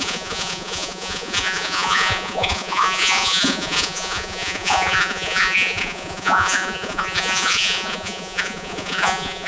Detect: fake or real fake